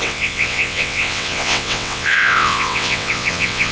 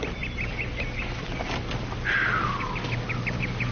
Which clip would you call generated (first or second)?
first